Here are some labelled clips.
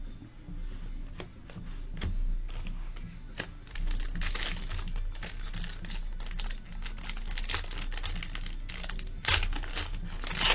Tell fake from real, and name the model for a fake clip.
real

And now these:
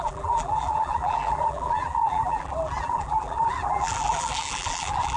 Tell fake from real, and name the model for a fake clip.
fake, vocoder, BigVGAN v2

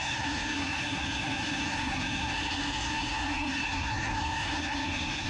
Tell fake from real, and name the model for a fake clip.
fake, codec, SNAC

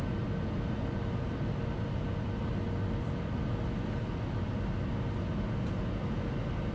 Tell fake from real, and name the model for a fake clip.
real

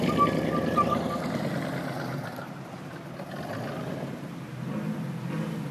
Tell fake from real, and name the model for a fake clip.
real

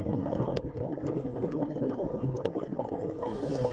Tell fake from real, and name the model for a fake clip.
fake, codec, SNAC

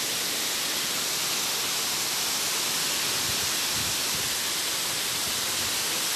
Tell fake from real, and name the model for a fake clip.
real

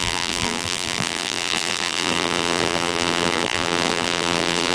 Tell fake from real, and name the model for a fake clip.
fake, vocoder, BigVGAN v2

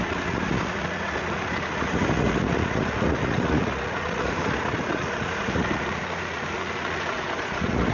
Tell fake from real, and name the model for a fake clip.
fake, vocoder, Vocos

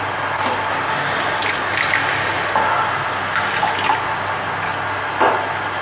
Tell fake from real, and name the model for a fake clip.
real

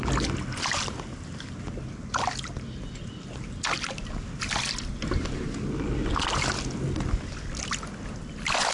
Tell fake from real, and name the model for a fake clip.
real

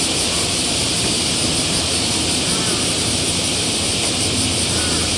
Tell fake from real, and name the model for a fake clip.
fake, vocoder, BigVGAN v2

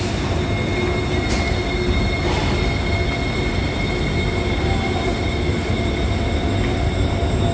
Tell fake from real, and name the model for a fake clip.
real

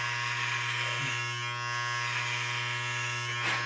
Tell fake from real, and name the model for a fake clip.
real